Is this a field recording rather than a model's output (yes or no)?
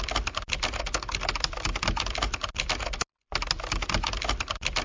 yes